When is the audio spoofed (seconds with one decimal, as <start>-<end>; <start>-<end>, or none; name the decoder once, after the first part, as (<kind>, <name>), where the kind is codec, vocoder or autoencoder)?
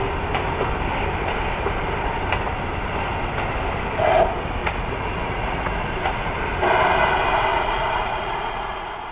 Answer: 4.6-6.3 (vocoder, Vocos); 7.5-9.1